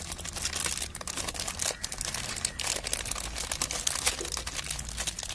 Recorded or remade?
recorded